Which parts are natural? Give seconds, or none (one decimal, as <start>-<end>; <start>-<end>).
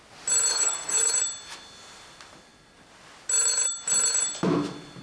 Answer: 0.0-0.5; 1.1-5.0